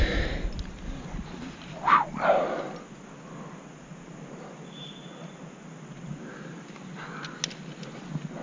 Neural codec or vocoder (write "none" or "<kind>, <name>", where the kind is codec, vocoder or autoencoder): none